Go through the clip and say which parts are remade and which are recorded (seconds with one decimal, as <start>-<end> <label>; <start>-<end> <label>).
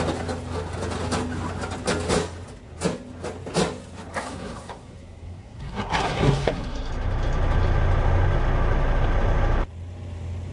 0.0-4.1 recorded; 4.1-6.9 remade; 6.9-10.5 recorded